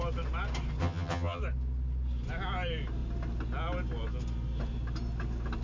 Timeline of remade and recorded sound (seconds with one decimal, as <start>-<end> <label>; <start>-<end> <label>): 0.0-0.8 recorded; 0.8-1.4 remade; 1.4-5.6 recorded